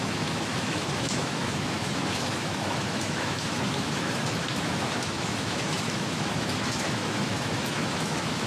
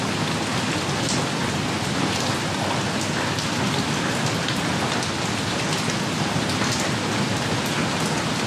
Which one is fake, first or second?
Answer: first